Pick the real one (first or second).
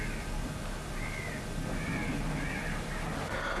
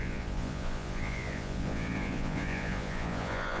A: first